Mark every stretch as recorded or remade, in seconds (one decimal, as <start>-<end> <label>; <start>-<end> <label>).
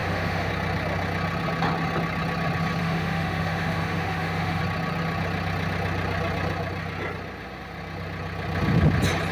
0.0-0.5 remade; 0.5-2.8 recorded; 2.8-4.6 remade; 4.6-9.3 recorded